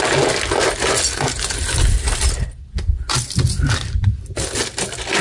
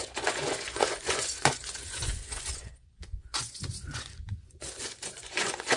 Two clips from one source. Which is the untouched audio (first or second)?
first